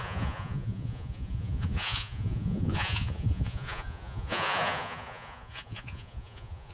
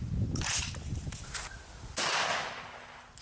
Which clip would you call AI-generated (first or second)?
first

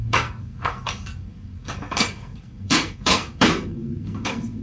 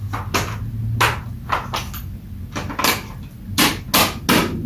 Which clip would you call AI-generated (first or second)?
first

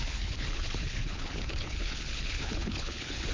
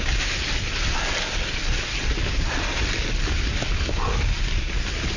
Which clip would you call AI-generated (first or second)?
first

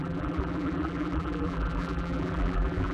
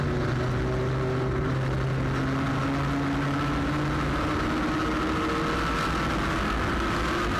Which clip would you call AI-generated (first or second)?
first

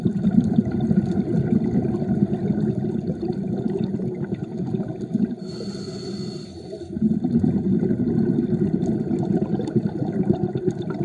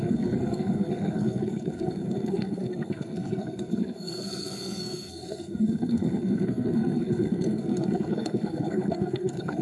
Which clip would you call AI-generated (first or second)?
second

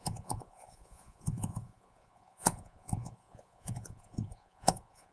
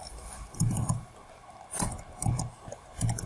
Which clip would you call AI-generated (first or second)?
first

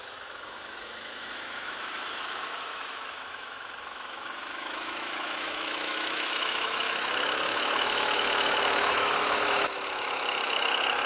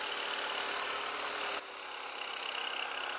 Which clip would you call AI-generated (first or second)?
first